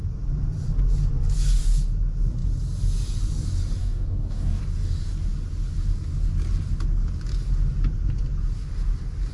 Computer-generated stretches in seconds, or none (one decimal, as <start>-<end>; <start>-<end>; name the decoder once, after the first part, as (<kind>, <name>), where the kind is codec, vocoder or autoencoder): 3.8-4.6 (codec, DAC)